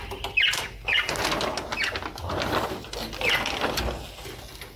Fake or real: real